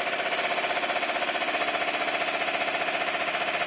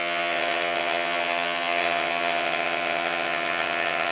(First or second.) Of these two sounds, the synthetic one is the second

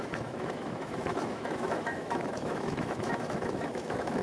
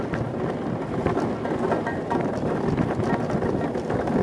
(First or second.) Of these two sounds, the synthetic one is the first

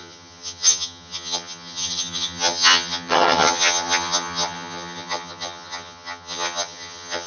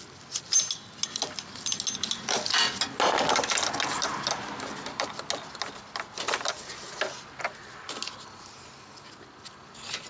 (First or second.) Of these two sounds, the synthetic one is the first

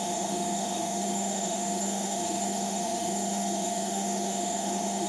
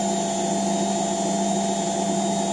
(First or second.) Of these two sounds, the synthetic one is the first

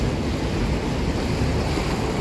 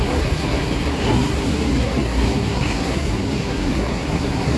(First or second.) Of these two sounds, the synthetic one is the second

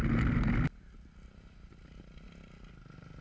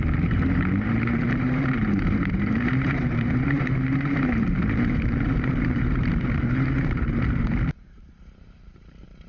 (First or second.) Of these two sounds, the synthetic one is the second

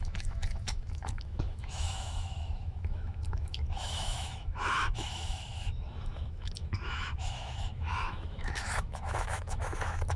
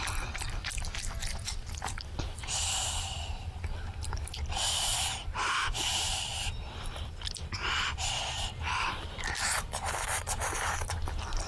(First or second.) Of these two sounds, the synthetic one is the first